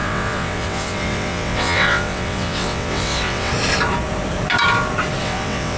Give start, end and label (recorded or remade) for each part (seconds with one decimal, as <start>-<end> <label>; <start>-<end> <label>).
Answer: 0.0-3.5 remade; 3.5-5.2 recorded; 5.2-5.8 remade